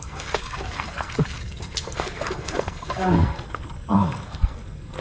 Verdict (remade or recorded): remade